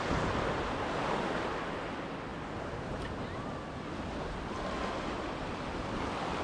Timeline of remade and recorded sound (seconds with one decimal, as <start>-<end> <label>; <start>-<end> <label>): 0.0-6.4 recorded